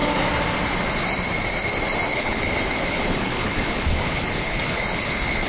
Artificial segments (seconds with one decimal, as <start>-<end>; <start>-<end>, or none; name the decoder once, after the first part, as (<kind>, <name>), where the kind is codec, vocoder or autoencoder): 2.1-5.5 (codec, HILCodec)